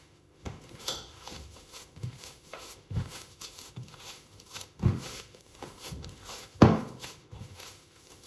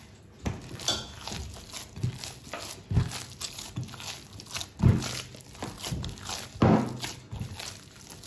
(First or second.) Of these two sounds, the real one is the second